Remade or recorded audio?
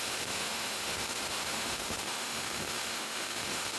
remade